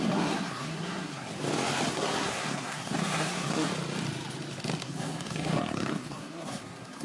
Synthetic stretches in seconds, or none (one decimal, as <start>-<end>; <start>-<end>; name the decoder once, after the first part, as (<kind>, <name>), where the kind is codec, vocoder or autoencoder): 0.0-1.3 (codec, SNAC); 1.9-3.7; 4.8-7.0